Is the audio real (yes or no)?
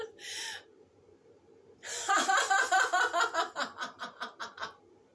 yes